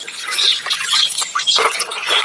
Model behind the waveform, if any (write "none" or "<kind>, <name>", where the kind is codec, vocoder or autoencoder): vocoder, Vocos